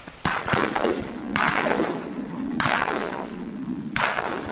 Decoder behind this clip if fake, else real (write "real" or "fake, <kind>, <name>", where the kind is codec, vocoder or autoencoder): fake, vocoder, Vocos